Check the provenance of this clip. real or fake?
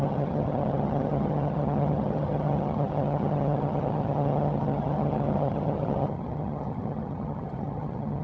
fake